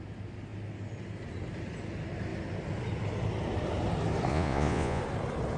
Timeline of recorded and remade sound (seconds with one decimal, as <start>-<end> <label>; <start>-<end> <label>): 0.0-4.3 recorded; 4.3-5.0 remade; 5.0-5.6 recorded